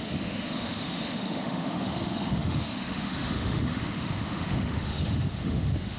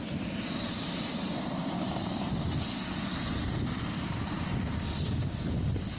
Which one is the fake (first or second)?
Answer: first